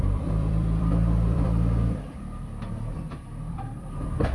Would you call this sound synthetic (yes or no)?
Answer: yes